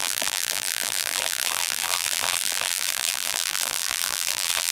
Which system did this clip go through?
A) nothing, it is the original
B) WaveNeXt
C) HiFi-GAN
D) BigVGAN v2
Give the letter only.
D